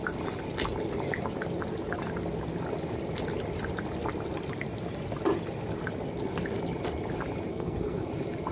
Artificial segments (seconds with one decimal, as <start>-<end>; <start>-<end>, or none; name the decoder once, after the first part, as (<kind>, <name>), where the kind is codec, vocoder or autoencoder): 7.5-8.1 (codec, SNAC)

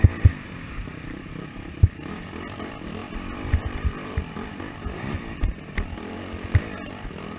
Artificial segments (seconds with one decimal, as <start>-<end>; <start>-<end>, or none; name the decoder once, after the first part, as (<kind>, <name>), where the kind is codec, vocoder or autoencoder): 3.0-5.1 (vocoder, BigVGAN v2)

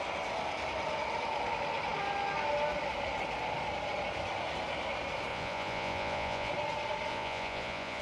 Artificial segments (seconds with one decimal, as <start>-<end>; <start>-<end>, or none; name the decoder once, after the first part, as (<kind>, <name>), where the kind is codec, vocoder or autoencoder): 5.3-6.5 (vocoder, Vocos); 7.1-8.0

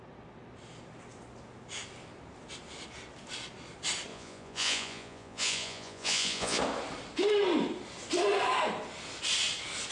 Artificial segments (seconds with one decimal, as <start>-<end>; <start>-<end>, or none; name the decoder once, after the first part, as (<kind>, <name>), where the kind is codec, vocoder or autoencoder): 4.1-6.6 (vocoder, Vocos)

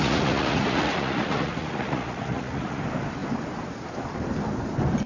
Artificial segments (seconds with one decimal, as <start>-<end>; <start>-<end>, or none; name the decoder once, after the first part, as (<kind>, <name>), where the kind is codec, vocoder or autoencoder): 0.0-2.8 (vocoder, Vocos)